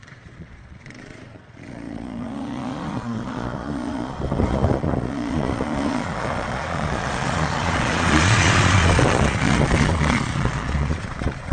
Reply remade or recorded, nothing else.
remade